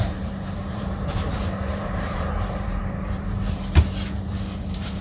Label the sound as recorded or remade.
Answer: remade